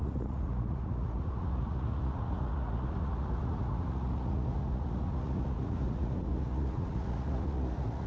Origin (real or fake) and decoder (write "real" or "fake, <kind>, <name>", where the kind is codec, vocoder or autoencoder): fake, vocoder, Vocos